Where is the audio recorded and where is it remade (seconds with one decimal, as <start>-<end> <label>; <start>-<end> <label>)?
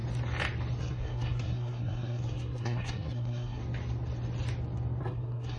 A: 0.0-0.8 recorded; 0.8-3.6 remade; 3.6-5.0 recorded; 5.0-5.6 remade